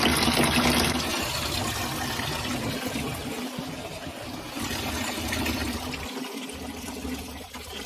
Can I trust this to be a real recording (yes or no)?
yes